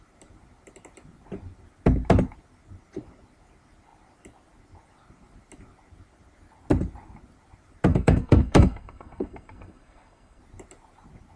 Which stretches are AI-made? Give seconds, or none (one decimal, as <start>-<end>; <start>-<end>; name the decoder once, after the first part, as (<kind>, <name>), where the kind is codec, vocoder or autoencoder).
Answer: 7.9-10.4 (codec, SNAC)